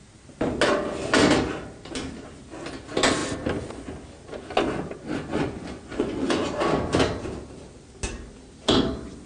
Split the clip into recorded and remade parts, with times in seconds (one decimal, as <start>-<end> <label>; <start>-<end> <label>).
0.0-5.3 recorded; 5.3-6.5 remade; 6.5-9.3 recorded